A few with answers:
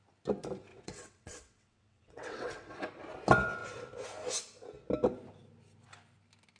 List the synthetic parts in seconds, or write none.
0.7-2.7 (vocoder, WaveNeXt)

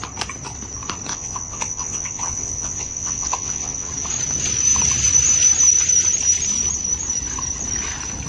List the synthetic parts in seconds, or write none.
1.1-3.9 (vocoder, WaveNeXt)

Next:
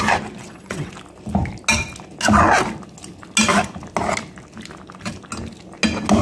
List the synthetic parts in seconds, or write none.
0.4-0.9 (vocoder, WaveNeXt)

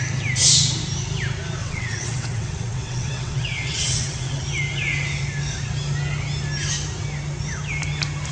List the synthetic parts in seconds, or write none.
1.6-4.4 (vocoder, WaveNeXt)

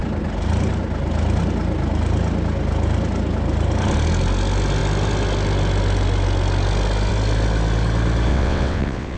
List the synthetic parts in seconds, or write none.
8.3-9.2 (vocoder, WaveNeXt)

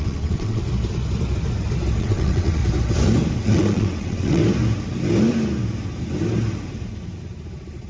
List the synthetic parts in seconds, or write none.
0.0-0.6 (vocoder, WaveNeXt); 2.0-2.6; 3.4-4.4